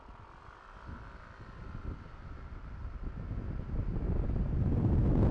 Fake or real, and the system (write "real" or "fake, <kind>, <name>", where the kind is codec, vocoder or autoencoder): real